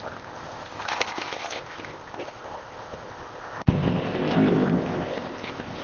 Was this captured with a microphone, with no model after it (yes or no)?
no